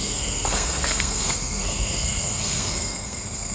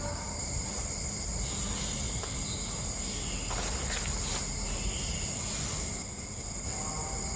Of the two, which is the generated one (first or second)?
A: first